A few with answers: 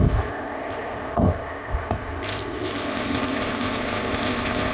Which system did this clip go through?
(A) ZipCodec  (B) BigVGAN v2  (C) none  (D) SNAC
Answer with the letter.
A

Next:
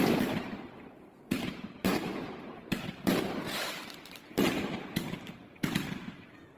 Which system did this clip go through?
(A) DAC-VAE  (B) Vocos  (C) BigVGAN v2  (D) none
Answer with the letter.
C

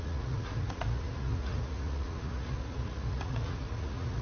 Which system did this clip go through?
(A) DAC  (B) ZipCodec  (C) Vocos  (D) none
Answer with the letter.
C